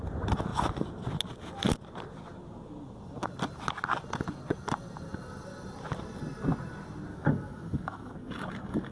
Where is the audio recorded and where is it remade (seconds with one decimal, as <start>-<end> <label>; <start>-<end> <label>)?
0.0-7.1 recorded; 7.1-8.9 remade